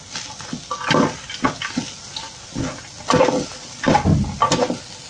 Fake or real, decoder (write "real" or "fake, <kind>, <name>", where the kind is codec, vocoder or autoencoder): real